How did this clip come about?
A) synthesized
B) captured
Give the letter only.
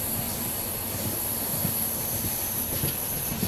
B